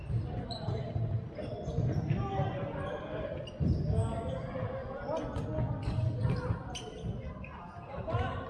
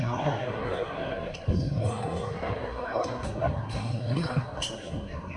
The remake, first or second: second